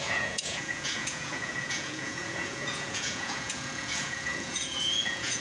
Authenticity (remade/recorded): remade